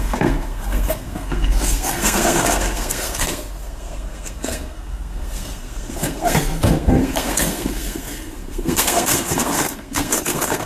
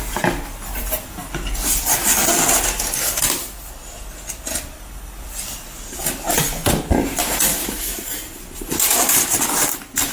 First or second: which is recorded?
second